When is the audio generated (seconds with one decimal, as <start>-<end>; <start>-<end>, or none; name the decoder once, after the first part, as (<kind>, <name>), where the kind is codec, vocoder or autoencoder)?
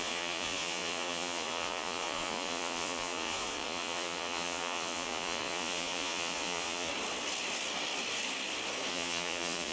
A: 0.0-6.9 (vocoder, Vocos); 8.9-9.7